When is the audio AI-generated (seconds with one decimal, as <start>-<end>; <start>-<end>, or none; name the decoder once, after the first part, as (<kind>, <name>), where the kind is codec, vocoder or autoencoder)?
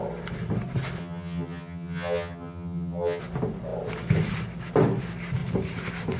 1.0-3.2 (vocoder, HiFi-GAN)